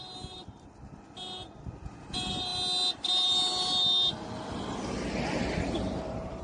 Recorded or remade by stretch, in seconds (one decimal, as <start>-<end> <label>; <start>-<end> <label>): 0.0-6.4 recorded